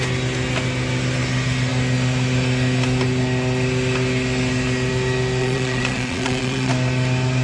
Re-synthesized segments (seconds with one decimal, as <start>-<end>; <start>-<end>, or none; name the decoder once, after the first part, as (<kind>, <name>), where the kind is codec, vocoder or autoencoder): 5.4-6.7 (vocoder, Vocos)